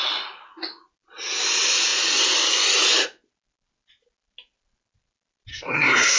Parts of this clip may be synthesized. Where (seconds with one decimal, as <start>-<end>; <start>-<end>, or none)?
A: 5.5-6.2